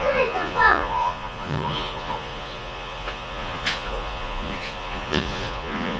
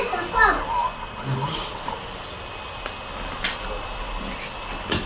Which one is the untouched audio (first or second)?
second